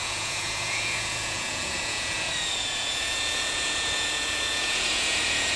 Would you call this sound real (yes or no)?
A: no